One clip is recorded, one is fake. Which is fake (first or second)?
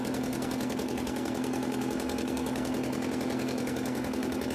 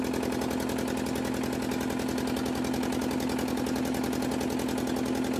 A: first